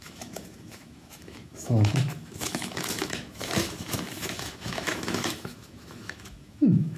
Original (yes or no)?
no